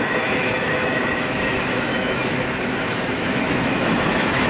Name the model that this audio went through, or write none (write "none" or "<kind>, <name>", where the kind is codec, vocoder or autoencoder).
autoencoder, DAC-VAE